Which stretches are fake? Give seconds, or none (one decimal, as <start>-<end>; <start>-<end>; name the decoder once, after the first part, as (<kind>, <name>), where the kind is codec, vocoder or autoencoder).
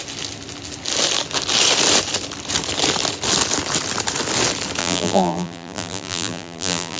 4.8-7.0 (vocoder, BigVGAN v2)